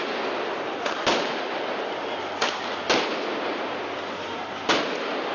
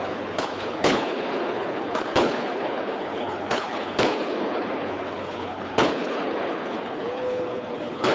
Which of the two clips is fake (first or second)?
second